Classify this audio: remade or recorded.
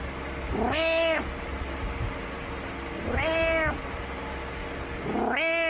recorded